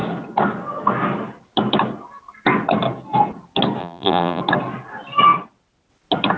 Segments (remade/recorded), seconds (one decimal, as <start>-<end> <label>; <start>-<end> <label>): 0.0-3.8 recorded; 3.8-4.4 remade; 4.4-6.4 recorded